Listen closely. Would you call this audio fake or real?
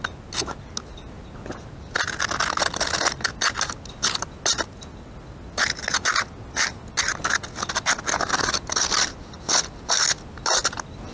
real